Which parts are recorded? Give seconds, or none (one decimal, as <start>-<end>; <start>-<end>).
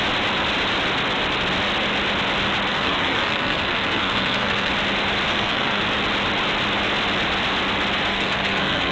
0.0-2.7; 4.7-5.3; 5.8-8.1